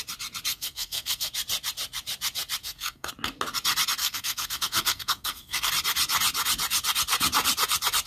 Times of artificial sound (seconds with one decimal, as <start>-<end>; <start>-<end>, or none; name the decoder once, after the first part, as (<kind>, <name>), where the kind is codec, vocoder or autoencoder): 0.5-1.3 (codec, SNAC); 2.6-3.1; 4.0-5.7